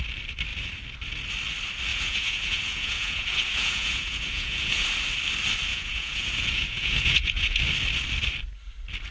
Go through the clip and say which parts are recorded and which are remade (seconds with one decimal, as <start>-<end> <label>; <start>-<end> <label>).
0.0-1.9 recorded; 1.9-4.8 remade; 4.8-5.7 recorded; 5.7-7.6 remade; 7.6-9.1 recorded